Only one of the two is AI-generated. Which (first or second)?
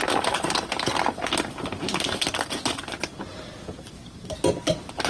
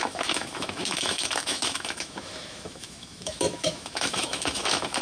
second